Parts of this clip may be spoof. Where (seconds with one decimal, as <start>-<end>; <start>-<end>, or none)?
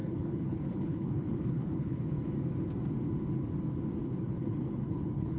0.0-2.2; 4.0-5.4